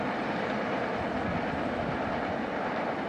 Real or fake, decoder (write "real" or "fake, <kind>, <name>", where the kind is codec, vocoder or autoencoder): fake, vocoder, BigVGAN v2